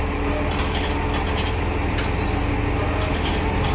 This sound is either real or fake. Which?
real